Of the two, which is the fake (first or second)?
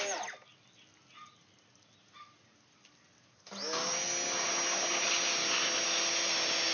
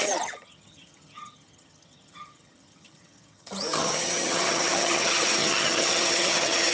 second